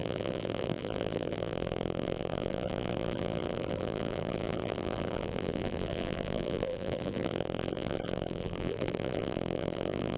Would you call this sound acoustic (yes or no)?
no